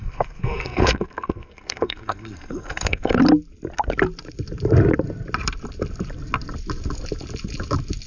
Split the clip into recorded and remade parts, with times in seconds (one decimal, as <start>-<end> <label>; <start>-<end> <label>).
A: 0.0-3.2 remade; 3.2-8.1 recorded